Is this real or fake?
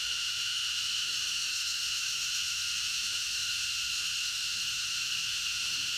fake